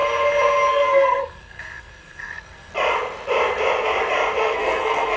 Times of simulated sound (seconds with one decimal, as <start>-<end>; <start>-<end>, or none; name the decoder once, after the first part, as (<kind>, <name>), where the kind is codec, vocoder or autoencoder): 0.7-2.7 (codec, SNAC); 4.4-5.2